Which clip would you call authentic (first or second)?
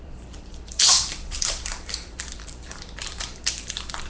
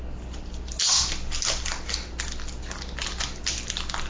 second